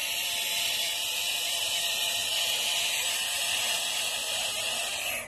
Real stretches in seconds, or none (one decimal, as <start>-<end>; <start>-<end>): 0.0-5.3